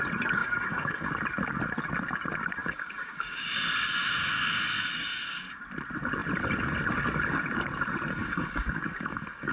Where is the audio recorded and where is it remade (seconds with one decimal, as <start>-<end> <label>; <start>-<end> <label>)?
0.0-0.4 recorded; 0.4-1.1 remade; 1.1-2.6 recorded; 2.6-5.6 remade; 5.6-8.2 recorded; 8.2-9.5 remade